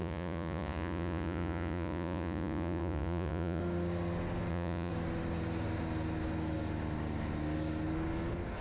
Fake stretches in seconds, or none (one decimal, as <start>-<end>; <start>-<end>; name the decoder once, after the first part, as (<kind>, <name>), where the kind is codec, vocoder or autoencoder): 0.0-3.6 (vocoder, Vocos); 4.5-4.9